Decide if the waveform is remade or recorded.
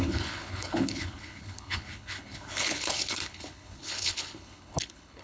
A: remade